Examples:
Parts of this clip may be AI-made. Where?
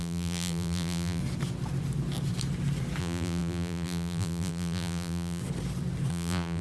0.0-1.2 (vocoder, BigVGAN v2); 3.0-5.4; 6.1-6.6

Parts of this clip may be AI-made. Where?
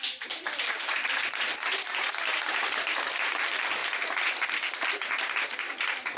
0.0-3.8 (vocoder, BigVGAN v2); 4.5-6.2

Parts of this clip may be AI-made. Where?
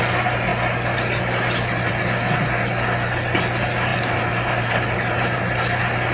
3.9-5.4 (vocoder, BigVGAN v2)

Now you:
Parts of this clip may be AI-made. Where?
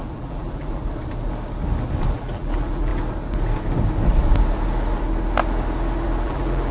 0.0-0.8 (vocoder, BigVGAN v2); 2.1-2.9; 6.2-6.7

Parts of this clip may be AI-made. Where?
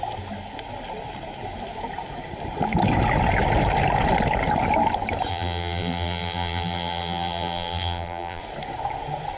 5.3-8.4 (vocoder, BigVGAN v2)